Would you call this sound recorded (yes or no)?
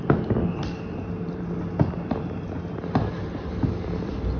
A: yes